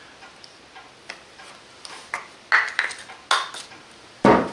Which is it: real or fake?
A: real